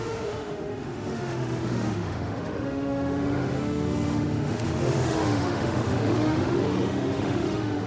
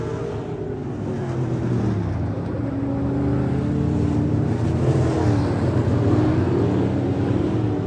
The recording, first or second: second